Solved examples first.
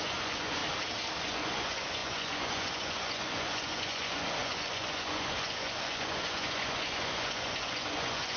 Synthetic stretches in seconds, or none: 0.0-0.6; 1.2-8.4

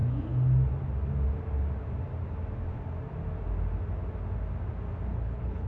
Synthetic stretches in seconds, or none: 5.1-5.7

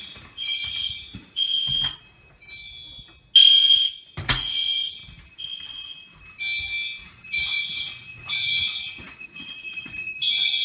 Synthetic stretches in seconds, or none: 0.0-1.6; 4.2-5.0; 7.0-10.6

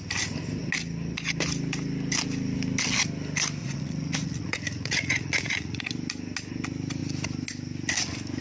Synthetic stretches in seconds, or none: 3.6-5.8

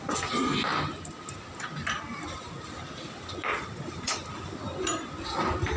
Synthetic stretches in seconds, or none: 3.5-4.3

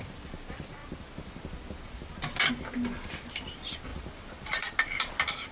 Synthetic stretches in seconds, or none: 3.9-4.7